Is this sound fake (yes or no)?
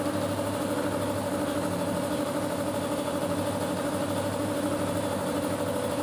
no